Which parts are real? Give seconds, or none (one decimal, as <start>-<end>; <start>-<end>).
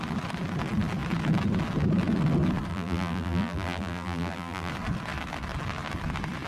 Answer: 0.0-2.7; 4.7-6.5